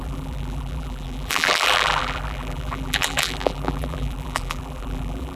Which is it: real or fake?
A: fake